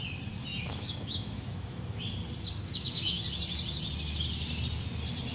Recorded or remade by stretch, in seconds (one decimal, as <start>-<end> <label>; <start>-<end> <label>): 0.0-0.5 recorded; 0.5-2.0 remade; 2.0-2.6 recorded; 2.6-3.2 remade; 3.2-5.3 recorded